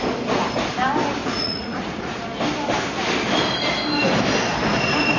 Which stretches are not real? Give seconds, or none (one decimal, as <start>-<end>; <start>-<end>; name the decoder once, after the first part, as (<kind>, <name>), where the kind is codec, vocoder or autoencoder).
1.2-2.2 (vocoder, Vocos)